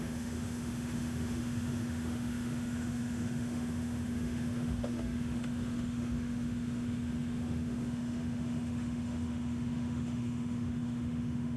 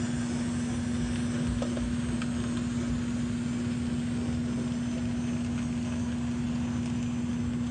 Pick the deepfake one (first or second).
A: first